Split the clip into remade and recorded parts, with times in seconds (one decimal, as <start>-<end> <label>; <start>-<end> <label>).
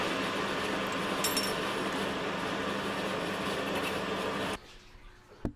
0.0-5.6 recorded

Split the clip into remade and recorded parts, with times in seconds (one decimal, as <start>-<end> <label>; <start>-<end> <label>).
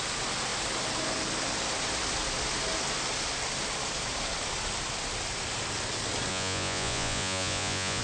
0.0-6.3 recorded; 6.3-8.0 remade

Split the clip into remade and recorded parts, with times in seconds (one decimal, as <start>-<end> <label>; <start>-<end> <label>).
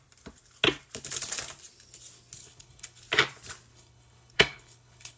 0.0-2.4 recorded; 2.4-3.0 remade; 3.0-3.7 recorded; 3.7-5.2 remade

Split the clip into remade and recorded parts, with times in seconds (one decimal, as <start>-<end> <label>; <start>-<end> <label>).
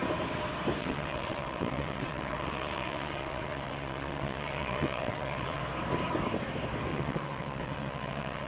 0.0-0.8 recorded; 0.8-5.6 remade; 5.6-6.9 recorded; 6.9-8.5 remade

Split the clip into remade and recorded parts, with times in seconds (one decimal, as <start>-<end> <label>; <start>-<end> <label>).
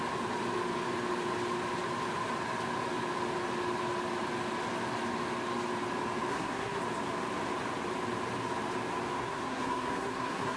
0.0-6.3 recorded; 6.3-6.8 remade; 6.8-9.2 recorded; 9.2-10.6 remade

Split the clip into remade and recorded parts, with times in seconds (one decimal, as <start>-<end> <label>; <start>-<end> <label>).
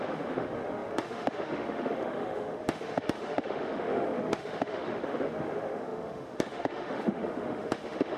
0.0-8.2 remade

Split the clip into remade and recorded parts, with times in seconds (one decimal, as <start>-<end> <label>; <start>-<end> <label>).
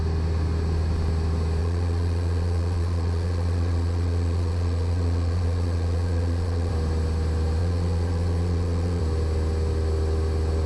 0.0-1.6 recorded; 1.6-6.7 remade; 6.7-7.6 recorded; 7.6-9.0 remade; 9.0-10.7 recorded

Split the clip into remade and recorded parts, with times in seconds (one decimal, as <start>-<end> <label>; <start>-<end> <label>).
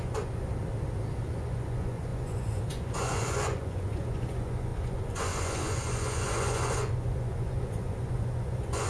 0.0-0.5 remade; 0.5-1.2 recorded; 1.2-8.9 remade